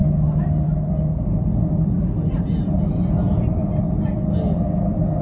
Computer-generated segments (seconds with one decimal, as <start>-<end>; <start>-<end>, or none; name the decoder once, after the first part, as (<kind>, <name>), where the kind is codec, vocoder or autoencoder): none